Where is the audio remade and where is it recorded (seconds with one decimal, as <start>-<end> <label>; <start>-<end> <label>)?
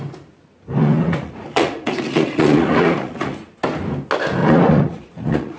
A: 0.0-0.8 recorded; 0.8-3.5 remade; 3.5-4.4 recorded; 4.4-5.6 remade